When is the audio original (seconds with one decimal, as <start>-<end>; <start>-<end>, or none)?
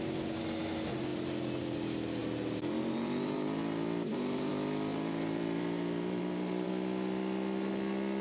0.0-2.2; 4.5-4.9; 6.7-8.2